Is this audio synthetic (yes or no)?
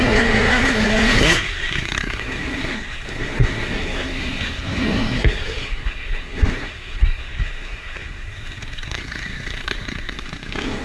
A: yes